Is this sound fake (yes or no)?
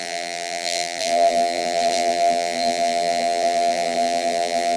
yes